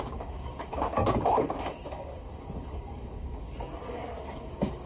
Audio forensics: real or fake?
fake